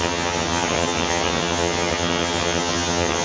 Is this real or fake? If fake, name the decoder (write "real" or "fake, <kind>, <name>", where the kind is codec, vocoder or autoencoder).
fake, vocoder, HiFi-GAN